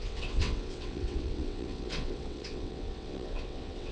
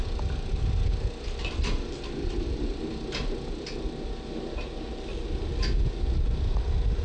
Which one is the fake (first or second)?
first